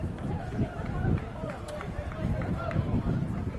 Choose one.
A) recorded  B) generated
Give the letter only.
B